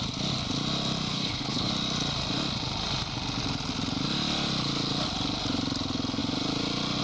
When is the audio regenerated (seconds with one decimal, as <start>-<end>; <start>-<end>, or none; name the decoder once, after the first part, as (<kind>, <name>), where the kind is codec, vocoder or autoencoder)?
1.1-1.7 (codec, HILCodec)